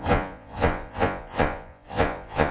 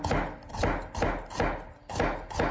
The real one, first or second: second